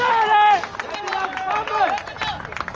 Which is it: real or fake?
real